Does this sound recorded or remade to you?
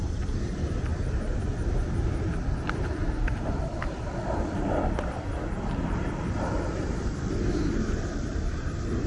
remade